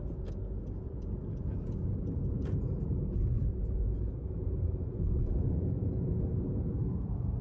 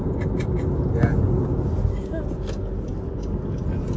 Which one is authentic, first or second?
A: second